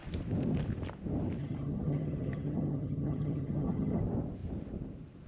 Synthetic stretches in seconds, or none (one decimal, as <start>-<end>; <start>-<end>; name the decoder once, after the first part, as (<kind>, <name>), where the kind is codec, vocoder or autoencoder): 1.4-4.0 (vocoder, HiFi-GAN)